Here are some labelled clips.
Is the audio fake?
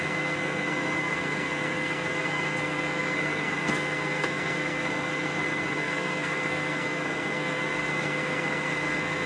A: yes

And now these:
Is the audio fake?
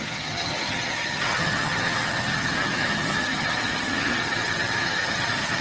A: yes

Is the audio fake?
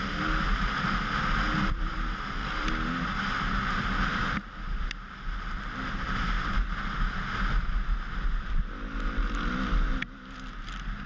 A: no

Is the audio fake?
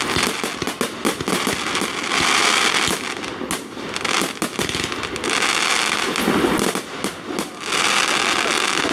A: no